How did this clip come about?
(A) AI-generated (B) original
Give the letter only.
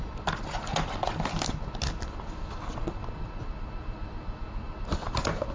B